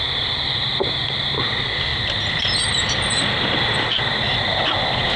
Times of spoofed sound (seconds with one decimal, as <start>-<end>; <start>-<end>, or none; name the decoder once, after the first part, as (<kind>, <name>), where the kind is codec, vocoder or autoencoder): none